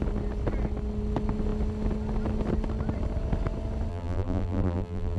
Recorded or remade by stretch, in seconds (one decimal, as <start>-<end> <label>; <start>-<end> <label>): 0.0-3.9 recorded; 3.9-5.2 remade